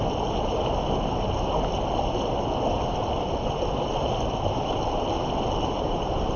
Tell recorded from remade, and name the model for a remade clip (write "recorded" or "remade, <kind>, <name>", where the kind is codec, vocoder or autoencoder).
recorded